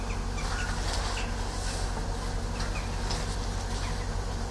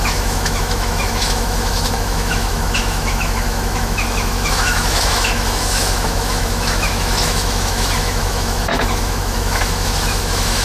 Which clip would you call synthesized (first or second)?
second